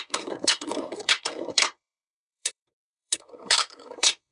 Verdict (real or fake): fake